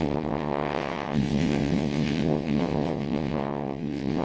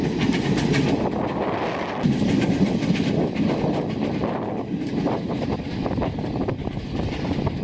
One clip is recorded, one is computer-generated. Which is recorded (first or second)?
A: second